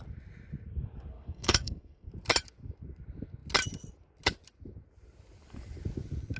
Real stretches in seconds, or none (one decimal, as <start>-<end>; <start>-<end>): 0.0-1.1; 2.1-6.4